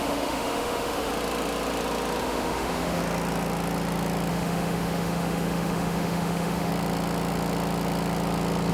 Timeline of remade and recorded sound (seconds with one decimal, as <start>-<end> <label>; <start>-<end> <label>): 0.0-1.1 remade; 1.1-2.2 recorded; 2.2-3.0 remade; 3.0-4.3 recorded; 4.3-6.7 remade; 6.7-8.7 recorded